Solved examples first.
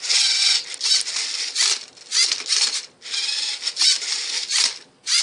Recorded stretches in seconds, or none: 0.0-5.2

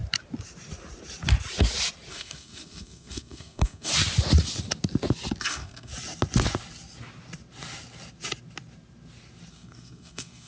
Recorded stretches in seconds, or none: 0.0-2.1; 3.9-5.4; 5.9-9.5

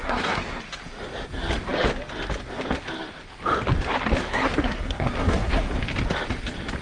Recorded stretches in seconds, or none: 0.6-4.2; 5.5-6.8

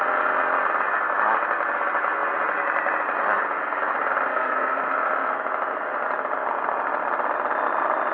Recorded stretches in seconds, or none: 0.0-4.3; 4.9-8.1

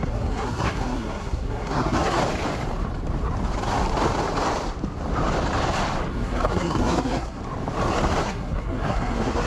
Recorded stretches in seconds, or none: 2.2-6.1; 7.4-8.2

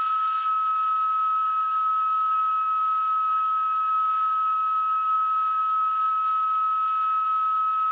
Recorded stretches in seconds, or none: 0.0-1.4; 2.8-3.3; 6.1-7.9

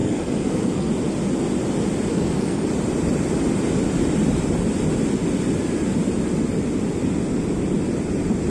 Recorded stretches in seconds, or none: 0.9-2.1; 2.7-8.5

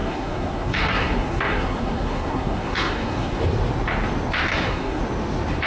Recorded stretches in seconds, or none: 3.4-4.5; 5.0-5.7